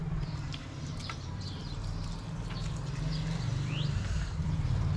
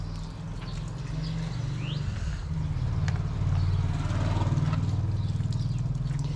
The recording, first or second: second